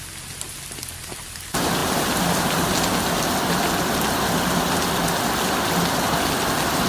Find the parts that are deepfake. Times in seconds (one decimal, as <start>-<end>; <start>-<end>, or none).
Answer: none